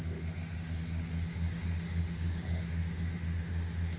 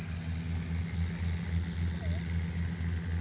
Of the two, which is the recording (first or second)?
second